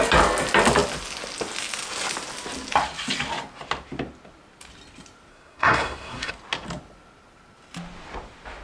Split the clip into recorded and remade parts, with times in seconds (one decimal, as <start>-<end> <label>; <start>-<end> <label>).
0.0-5.3 recorded; 5.3-6.3 remade; 6.3-8.6 recorded